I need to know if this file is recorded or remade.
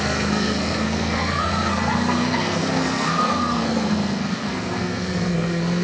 remade